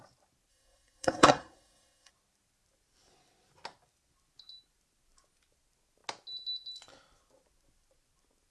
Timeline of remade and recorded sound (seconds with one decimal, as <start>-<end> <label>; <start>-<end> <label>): 0.0-0.5 recorded; 0.5-2.1 remade; 2.1-8.5 recorded